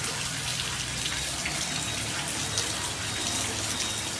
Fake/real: real